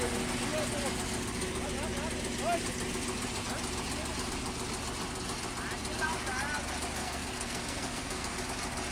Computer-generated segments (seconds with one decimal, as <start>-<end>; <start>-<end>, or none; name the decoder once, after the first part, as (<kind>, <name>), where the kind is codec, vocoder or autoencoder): 7.0-8.4 (codec, SNAC)